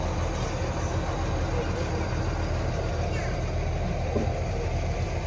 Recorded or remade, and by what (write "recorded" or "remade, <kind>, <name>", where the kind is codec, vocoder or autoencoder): recorded